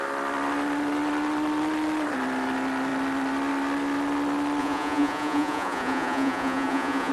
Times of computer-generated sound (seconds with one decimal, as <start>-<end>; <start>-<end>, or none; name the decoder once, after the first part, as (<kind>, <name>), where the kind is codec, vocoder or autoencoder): 4.6-7.1 (vocoder, Vocos)